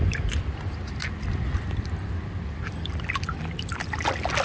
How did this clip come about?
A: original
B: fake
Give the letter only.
A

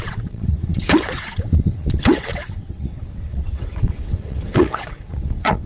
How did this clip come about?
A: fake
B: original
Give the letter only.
A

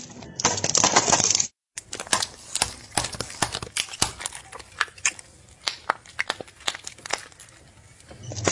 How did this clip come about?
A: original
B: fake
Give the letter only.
A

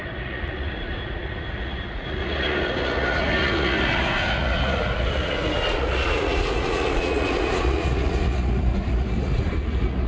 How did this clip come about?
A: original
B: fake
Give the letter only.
B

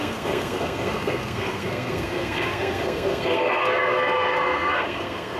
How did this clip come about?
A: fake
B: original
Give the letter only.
A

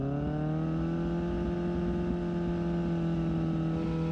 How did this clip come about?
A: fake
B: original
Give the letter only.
B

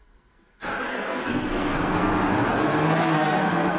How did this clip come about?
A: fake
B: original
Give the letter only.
A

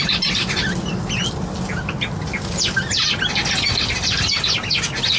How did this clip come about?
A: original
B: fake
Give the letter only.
A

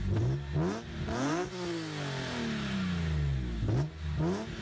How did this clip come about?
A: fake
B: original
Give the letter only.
B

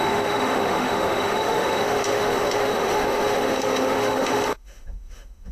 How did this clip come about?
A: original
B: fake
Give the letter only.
B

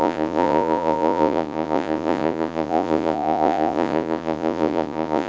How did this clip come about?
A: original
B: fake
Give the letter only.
B